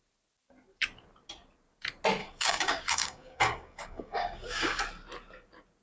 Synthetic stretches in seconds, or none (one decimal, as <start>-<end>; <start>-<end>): 2.2-4.8

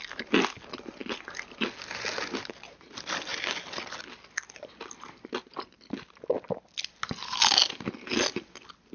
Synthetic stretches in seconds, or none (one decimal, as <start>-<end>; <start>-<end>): none

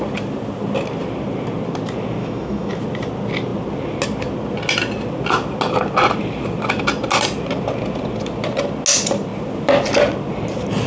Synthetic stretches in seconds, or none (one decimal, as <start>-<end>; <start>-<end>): 2.2-2.7